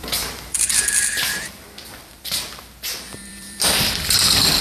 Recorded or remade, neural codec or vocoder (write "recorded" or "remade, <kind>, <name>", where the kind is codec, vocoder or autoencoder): remade, vocoder, BigVGAN v2